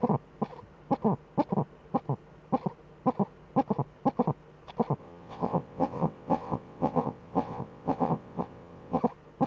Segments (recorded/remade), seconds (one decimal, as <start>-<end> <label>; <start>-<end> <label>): 0.0-5.0 recorded; 5.0-9.0 remade; 9.0-9.5 recorded

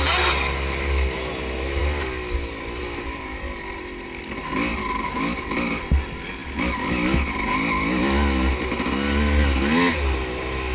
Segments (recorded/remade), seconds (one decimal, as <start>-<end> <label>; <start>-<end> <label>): 0.0-10.7 recorded

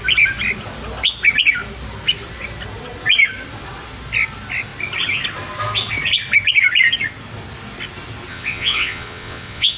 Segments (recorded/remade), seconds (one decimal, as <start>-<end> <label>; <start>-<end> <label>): 0.0-8.3 recorded; 8.3-9.8 remade